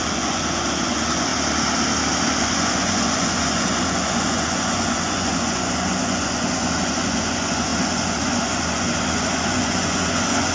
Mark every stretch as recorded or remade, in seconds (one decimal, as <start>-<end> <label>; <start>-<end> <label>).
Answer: 0.0-1.3 remade; 1.3-2.3 recorded; 2.3-10.5 remade